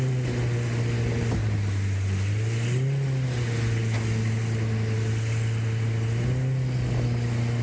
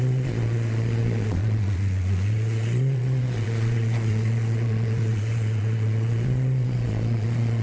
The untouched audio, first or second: first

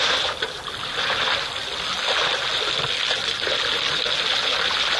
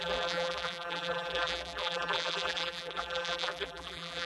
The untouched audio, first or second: first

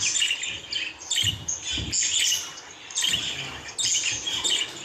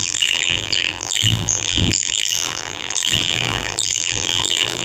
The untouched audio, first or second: first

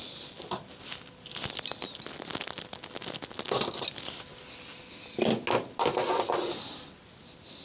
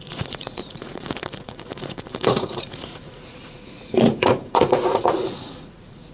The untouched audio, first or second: first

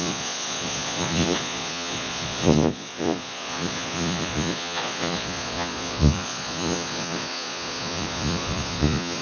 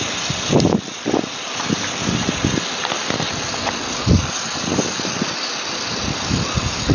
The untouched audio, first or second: second